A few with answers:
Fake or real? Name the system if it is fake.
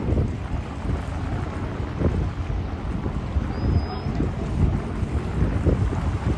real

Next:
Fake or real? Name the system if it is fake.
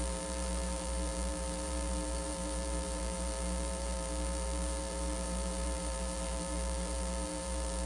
fake, vocoder, BigVGAN v2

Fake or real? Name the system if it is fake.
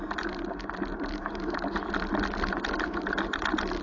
real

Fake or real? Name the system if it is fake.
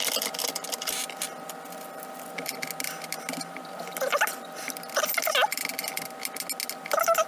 real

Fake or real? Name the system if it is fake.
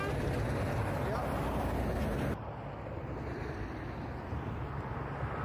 real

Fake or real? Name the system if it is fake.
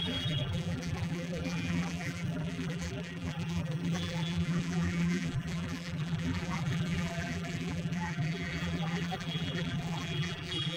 fake, vocoder, BigVGAN v2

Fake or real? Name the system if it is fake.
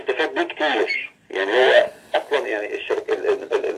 real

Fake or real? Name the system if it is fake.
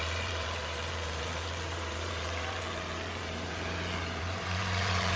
fake, vocoder, BigVGAN v2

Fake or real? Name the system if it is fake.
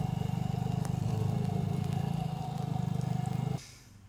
real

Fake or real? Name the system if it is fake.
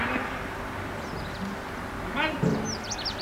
real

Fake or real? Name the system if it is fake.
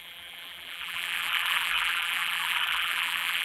fake, vocoder, BigVGAN v2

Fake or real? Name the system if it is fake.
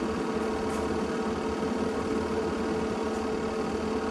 real